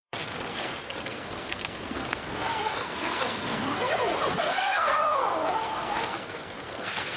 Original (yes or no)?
no